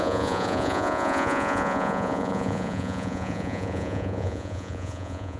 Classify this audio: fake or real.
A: fake